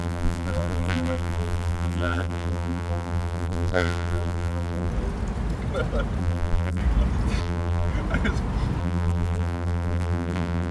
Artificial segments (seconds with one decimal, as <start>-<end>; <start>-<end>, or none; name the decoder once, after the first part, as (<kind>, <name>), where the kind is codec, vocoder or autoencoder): 0.0-4.9 (vocoder, BigVGAN v2); 6.2-6.8; 7.4-7.9; 8.8-10.7